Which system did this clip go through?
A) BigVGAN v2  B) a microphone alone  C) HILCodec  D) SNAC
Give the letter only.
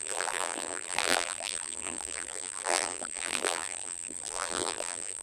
A